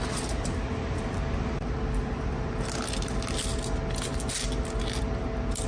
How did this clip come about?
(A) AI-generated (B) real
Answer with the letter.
B